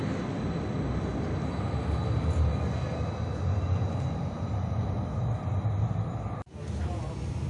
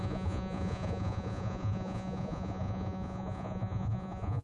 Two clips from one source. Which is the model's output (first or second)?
second